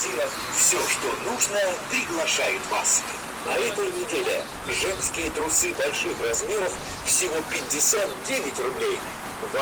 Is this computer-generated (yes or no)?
no